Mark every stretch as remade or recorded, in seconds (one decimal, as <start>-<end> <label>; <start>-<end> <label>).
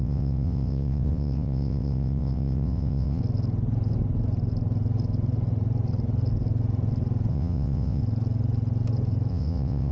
0.0-3.2 remade; 3.2-7.3 recorded; 7.3-8.0 remade; 8.0-9.3 recorded; 9.3-9.9 remade